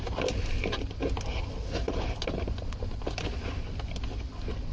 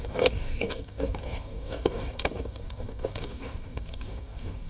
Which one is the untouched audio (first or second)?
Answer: first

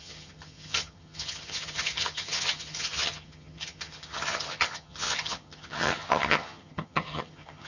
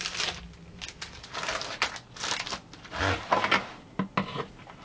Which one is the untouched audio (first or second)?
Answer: second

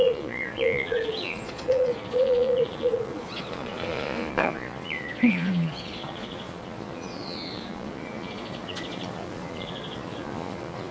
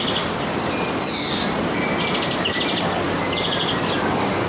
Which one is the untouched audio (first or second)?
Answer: second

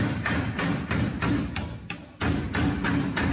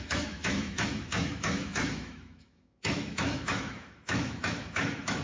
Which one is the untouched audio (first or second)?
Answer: first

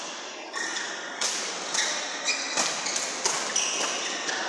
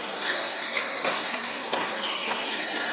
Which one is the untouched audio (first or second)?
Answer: first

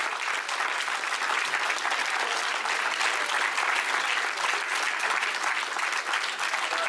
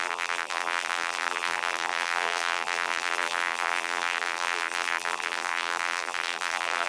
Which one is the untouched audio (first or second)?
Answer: first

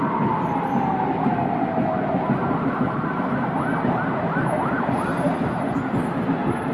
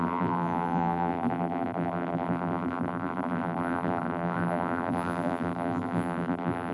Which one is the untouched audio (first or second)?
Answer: first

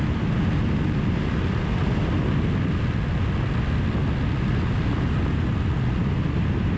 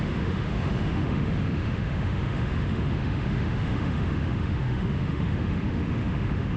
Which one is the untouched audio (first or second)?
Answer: first